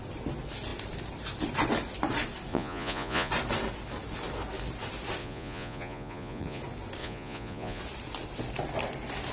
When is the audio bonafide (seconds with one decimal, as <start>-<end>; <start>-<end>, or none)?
0.0-2.5; 3.3-5.2; 6.6-7.0; 7.8-9.3